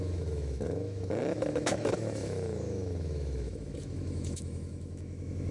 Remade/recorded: remade